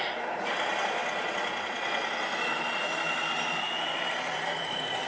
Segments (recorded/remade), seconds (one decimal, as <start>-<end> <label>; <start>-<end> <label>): 0.0-5.1 recorded